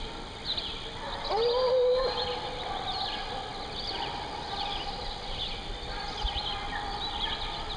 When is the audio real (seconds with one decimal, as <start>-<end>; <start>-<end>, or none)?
0.0-7.8